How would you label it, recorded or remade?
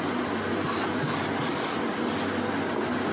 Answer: recorded